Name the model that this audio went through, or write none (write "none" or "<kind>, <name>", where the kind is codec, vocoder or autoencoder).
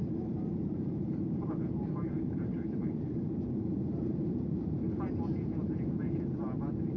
vocoder, BigVGAN v2